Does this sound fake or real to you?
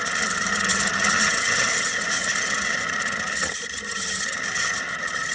fake